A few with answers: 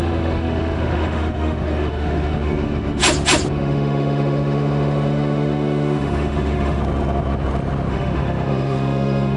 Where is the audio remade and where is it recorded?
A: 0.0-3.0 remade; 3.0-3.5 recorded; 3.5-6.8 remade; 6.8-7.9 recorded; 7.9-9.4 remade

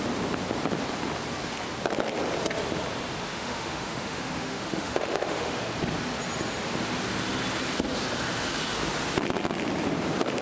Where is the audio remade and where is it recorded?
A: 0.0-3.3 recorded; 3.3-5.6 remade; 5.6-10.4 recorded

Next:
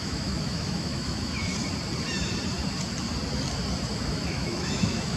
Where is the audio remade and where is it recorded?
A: 0.0-1.5 remade; 1.5-4.1 recorded; 4.1-5.2 remade

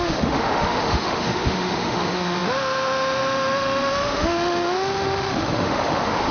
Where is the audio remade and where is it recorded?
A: 0.0-6.3 remade

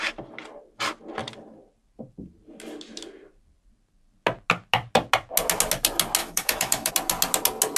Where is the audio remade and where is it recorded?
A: 0.0-6.2 recorded; 6.2-6.9 remade; 6.9-7.8 recorded

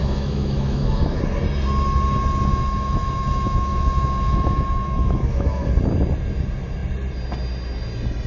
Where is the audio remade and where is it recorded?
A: 0.0-1.2 remade; 1.2-2.5 recorded; 2.5-5.7 remade; 5.7-8.3 recorded

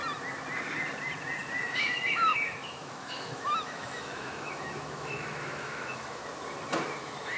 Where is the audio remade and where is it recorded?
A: 0.0-1.6 recorded; 1.6-6.2 remade; 6.2-7.0 recorded; 7.0-7.4 remade

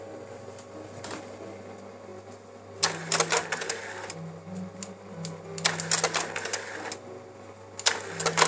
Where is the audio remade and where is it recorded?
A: 0.0-8.5 recorded